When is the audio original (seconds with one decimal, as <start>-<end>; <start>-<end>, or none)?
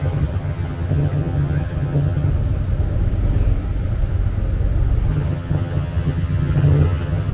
2.3-5.1